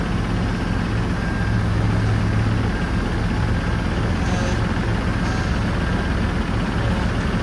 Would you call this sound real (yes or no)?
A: yes